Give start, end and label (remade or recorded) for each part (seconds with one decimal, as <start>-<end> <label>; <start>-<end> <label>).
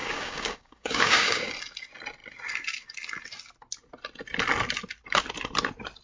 0.0-1.5 remade; 1.5-6.0 recorded